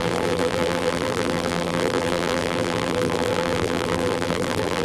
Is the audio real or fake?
fake